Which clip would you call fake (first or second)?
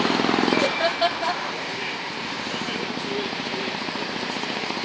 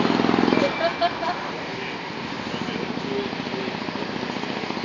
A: first